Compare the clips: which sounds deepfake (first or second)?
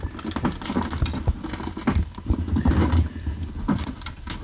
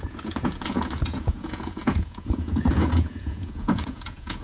second